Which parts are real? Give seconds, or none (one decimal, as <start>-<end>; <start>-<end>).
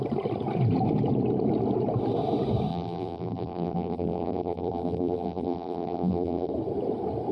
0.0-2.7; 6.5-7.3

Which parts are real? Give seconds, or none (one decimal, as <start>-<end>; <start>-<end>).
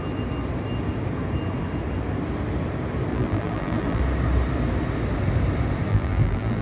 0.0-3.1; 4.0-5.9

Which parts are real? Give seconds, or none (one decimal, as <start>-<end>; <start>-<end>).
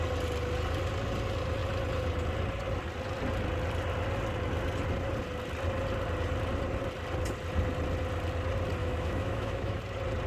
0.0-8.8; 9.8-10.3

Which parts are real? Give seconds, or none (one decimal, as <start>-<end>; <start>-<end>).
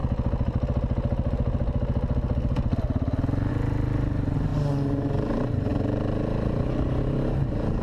0.0-3.5; 4.5-5.3; 5.7-7.0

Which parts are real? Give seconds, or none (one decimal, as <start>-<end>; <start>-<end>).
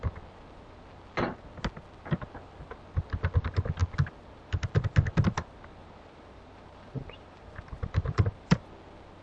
0.0-5.8; 8.7-9.2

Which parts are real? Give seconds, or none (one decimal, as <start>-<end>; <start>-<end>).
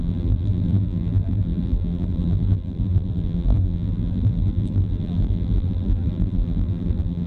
none